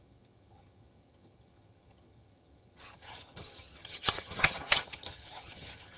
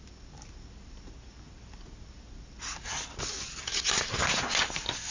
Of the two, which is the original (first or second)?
second